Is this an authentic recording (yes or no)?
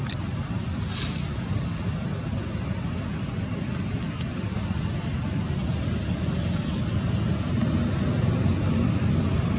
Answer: yes